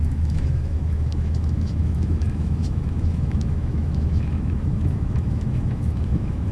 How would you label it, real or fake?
fake